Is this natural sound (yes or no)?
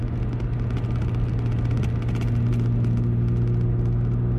yes